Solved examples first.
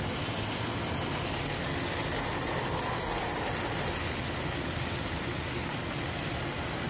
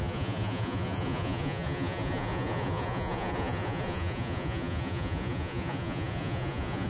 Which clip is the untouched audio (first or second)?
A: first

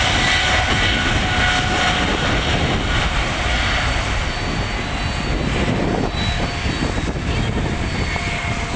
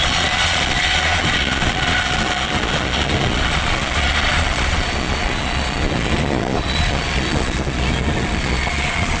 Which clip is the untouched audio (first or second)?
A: first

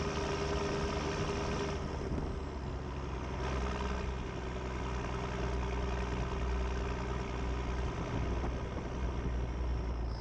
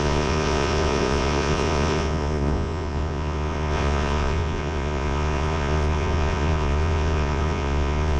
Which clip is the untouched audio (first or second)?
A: first